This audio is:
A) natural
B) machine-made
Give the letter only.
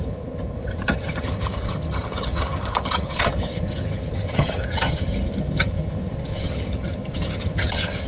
B